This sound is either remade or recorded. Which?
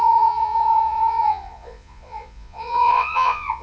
remade